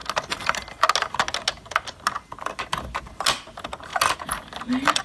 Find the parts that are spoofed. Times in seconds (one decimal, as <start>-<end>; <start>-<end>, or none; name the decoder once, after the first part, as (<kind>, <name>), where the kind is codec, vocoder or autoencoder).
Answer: none